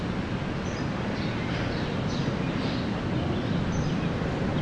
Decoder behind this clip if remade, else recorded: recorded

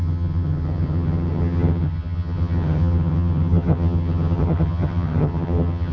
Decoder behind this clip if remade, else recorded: remade, vocoder, HiFi-GAN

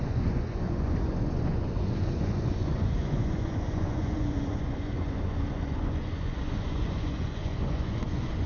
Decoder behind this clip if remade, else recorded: remade, vocoder, Vocos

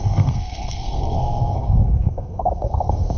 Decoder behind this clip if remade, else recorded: remade, codec, SNAC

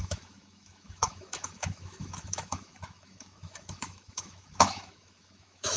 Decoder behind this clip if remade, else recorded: remade, autoencoder, DAC-VAE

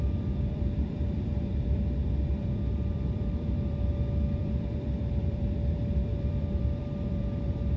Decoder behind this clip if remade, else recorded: remade, vocoder, BigVGAN v2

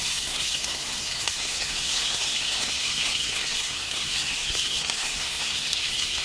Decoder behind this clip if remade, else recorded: remade, codec, SNAC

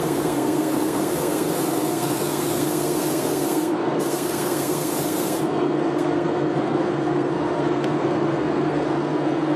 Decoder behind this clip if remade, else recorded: remade, codec, SNAC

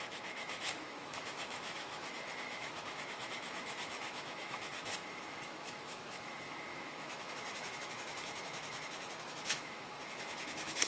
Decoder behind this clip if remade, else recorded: remade, autoencoder, DAC-VAE